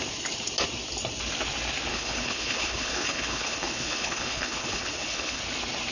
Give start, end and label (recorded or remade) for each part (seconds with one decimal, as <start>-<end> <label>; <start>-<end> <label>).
0.0-1.9 recorded; 1.9-5.4 remade; 5.4-5.9 recorded